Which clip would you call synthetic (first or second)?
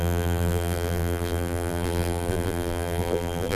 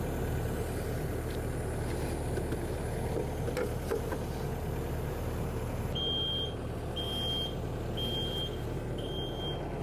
first